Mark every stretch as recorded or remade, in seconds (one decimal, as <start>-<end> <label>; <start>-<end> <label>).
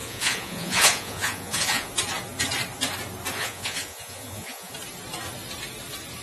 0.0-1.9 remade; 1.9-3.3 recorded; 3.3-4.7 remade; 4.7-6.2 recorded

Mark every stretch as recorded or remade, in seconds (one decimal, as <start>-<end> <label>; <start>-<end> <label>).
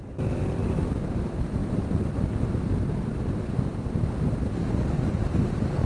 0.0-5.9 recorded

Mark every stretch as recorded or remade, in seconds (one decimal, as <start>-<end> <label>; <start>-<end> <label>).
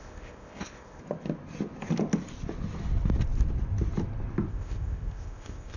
0.0-1.0 remade; 1.0-4.5 recorded; 4.5-5.8 remade